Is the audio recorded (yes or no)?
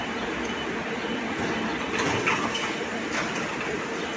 yes